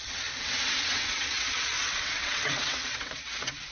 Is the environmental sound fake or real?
fake